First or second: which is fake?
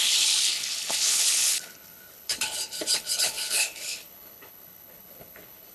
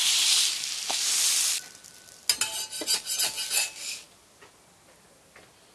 first